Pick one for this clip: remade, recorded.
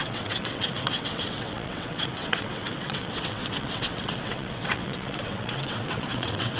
remade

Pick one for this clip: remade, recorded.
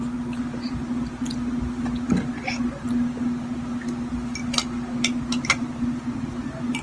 recorded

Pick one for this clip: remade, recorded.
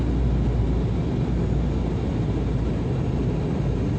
recorded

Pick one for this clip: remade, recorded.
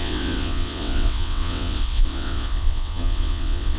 remade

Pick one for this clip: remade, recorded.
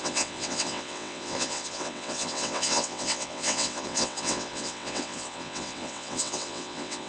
remade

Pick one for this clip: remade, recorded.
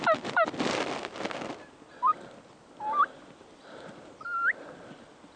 recorded